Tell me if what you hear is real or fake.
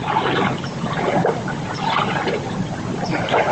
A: fake